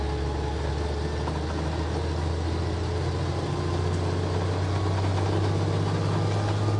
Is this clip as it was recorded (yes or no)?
yes